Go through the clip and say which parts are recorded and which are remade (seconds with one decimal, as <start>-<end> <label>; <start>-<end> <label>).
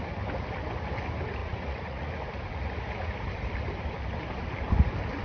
0.0-1.4 recorded; 1.4-2.1 remade; 2.1-5.2 recorded